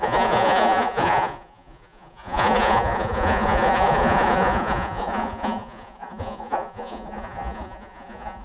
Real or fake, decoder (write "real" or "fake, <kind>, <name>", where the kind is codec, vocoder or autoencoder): fake, vocoder, Vocos